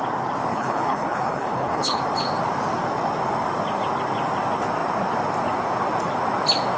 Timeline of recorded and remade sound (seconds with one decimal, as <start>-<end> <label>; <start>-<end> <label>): 0.0-0.5 recorded; 0.5-2.0 remade; 2.0-6.8 recorded